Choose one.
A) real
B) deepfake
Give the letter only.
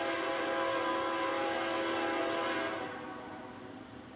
A